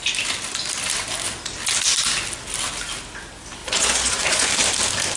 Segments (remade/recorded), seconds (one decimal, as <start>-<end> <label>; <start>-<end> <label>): 0.0-3.6 recorded; 3.6-4.5 remade; 4.5-5.2 recorded